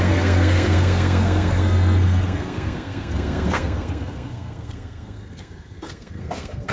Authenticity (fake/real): fake